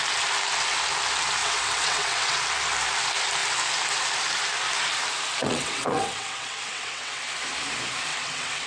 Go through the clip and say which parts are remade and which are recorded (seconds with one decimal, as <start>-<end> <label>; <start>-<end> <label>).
0.0-1.4 recorded; 1.4-2.4 remade; 2.4-5.4 recorded; 5.4-7.2 remade; 7.2-8.1 recorded; 8.1-8.7 remade